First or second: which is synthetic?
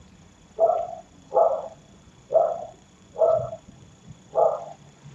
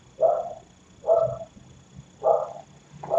first